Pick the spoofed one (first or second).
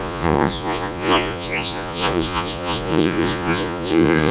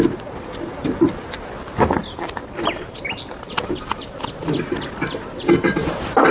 first